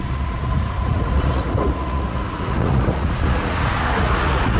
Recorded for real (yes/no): no